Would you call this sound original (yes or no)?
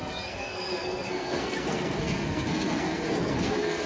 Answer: no